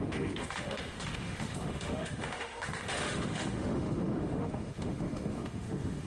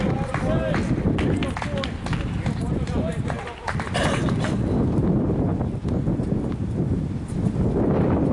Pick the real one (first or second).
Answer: second